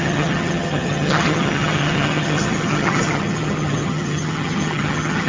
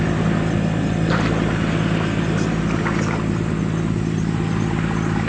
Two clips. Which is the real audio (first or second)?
second